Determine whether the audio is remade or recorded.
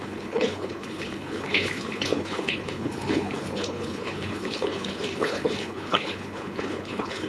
remade